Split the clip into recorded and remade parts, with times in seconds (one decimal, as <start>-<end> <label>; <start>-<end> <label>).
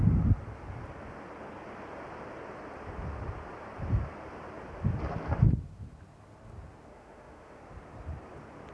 0.0-6.9 recorded; 6.9-7.6 remade; 7.6-8.7 recorded